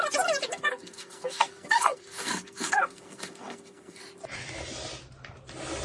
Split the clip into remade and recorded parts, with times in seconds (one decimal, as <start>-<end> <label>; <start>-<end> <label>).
0.0-0.5 recorded; 0.5-4.0 remade; 4.0-5.8 recorded